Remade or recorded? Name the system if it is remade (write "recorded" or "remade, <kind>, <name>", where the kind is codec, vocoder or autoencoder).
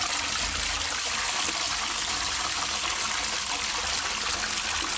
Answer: recorded